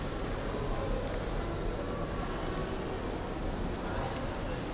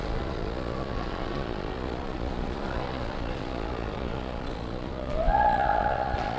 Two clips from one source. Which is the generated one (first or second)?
second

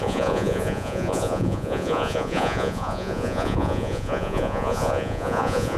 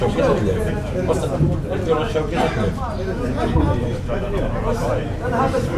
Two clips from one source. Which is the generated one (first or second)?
first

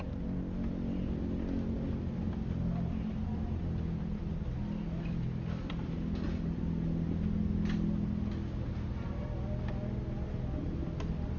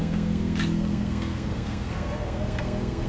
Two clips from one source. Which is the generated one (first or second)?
second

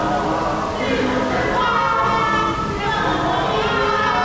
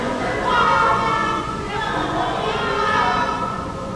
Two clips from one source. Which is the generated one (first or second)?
second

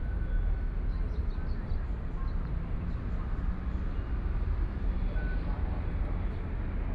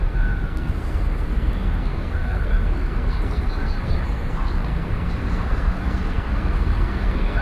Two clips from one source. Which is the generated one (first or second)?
second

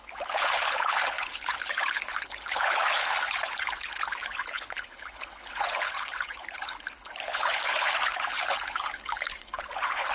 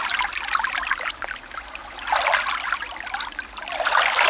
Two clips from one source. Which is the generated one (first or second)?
first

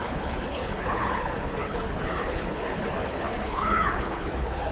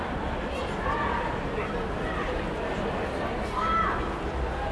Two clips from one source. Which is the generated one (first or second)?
first